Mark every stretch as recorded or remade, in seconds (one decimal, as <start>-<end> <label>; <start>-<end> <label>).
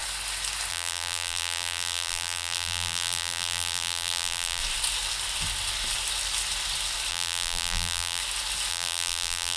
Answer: 0.0-0.7 recorded; 0.7-4.6 remade; 4.6-7.1 recorded; 7.1-8.2 remade; 8.2-8.7 recorded; 8.7-9.6 remade